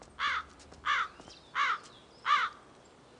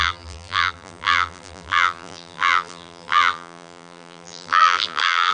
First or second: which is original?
first